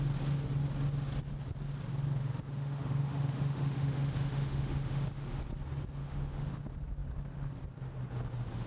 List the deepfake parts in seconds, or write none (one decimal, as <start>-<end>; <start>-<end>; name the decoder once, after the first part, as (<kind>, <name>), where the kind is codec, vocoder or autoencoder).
2.2-5.4 (autoencoder, DAC-VAE); 6.0-6.6